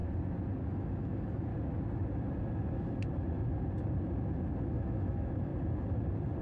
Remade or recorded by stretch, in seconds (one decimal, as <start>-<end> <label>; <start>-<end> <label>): 0.0-0.6 recorded; 0.6-1.5 remade; 1.5-4.6 recorded; 4.6-5.5 remade; 5.5-6.4 recorded